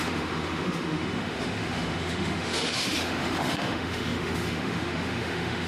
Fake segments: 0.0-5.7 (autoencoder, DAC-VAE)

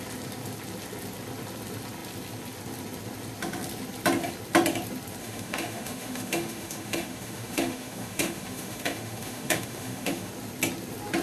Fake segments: 5.2-10.3 (autoencoder, DAC-VAE)

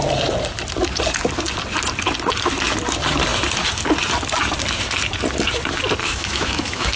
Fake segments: 6.0-7.0 (autoencoder, DAC-VAE)

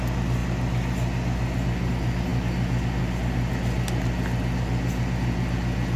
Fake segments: none

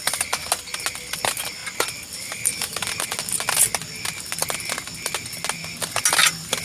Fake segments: none

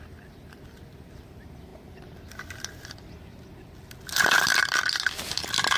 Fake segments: none

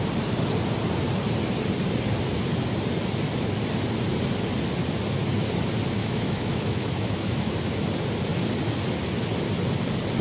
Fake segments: 6.0-7.5 (autoencoder, DAC-VAE)